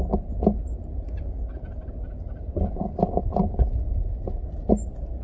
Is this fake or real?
real